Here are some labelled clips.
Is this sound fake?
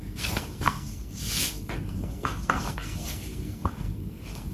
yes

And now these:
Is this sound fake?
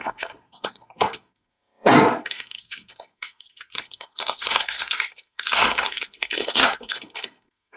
yes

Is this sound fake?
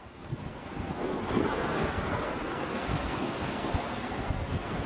yes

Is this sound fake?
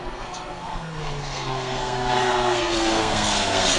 yes